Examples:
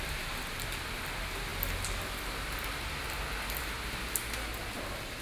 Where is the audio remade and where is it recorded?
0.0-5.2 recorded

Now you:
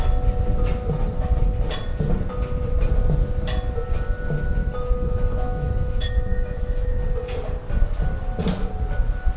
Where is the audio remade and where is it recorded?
0.0-4.6 recorded; 4.6-7.0 remade; 7.0-9.4 recorded